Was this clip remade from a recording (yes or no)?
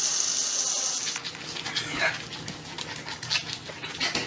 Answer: no